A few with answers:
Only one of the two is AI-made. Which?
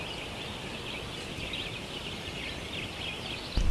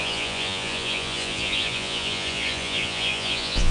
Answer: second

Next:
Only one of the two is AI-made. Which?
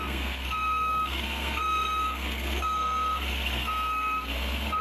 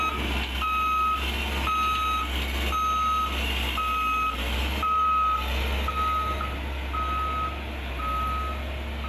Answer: first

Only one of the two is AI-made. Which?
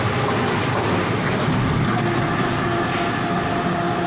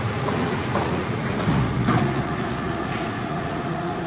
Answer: second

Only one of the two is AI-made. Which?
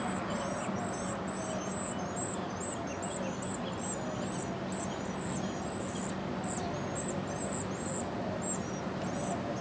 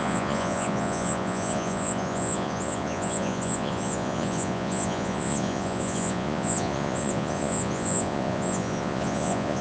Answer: second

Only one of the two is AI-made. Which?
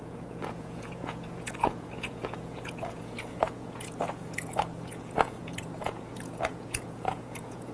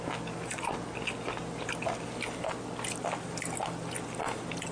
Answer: first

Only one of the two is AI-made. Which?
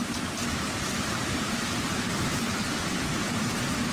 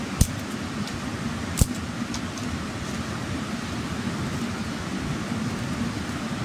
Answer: first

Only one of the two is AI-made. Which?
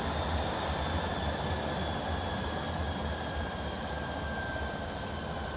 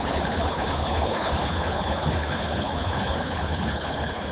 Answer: second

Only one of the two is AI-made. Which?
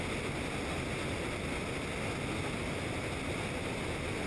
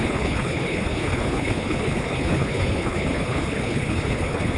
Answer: second